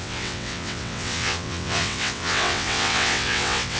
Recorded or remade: remade